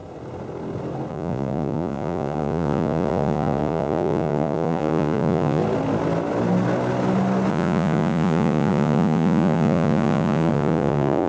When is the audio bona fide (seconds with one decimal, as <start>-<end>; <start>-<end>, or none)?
0.0-1.1; 5.6-7.5